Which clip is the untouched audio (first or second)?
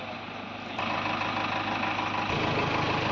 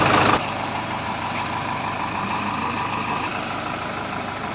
first